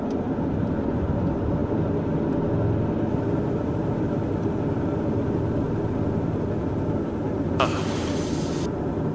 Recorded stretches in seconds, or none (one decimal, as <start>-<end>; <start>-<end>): 0.0-9.1